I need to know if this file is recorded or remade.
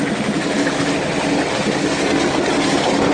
recorded